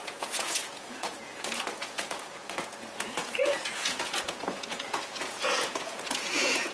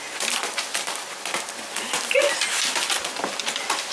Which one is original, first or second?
second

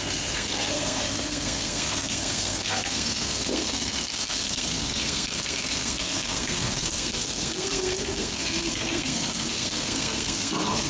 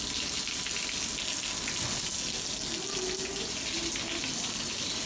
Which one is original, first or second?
second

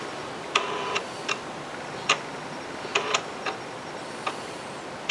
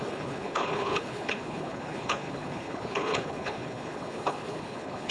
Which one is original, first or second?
first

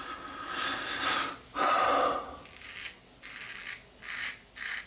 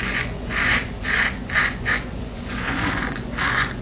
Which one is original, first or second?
first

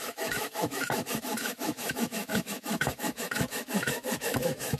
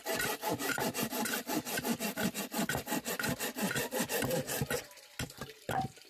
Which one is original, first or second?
second